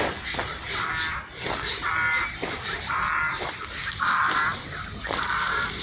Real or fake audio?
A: real